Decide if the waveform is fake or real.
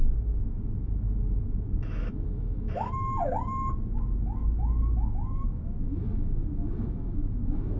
fake